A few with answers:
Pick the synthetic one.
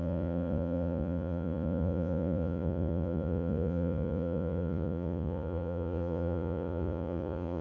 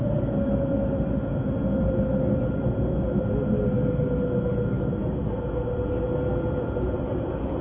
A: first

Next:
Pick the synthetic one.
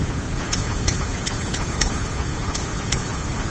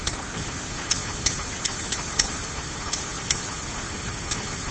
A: first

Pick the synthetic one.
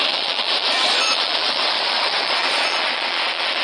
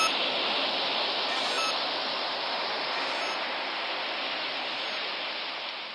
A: first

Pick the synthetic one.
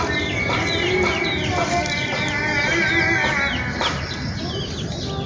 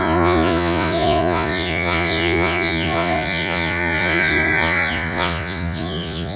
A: second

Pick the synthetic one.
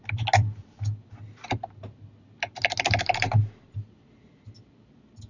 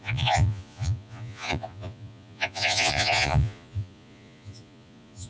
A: second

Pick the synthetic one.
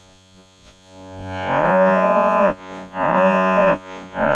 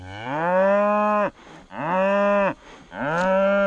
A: first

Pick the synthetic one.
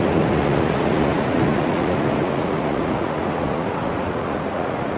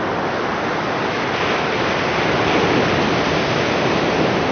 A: first